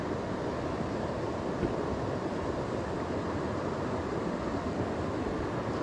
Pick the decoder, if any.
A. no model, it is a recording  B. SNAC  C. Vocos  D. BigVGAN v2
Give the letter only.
A